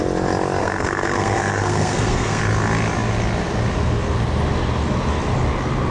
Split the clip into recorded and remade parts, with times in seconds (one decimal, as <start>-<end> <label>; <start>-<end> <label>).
0.0-0.6 recorded; 0.6-2.4 remade; 2.4-5.9 recorded